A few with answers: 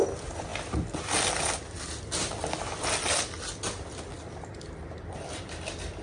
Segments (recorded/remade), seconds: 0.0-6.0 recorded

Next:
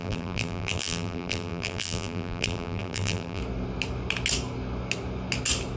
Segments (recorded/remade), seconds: 0.0-3.4 remade; 3.4-5.8 recorded

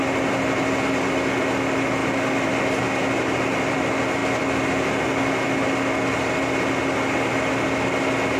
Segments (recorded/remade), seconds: 0.0-8.4 recorded

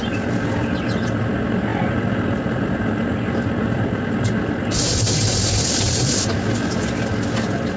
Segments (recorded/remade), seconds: 0.0-1.7 recorded; 1.7-6.2 remade; 6.2-7.8 recorded

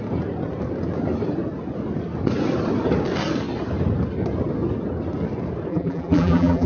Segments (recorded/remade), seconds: 0.0-5.7 recorded; 5.7-6.7 remade

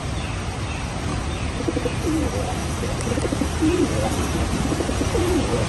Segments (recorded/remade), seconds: 0.0-1.1 recorded; 1.1-1.6 remade; 1.6-2.6 recorded; 2.6-5.7 remade